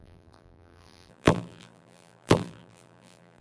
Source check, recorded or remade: remade